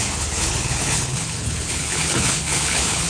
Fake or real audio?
fake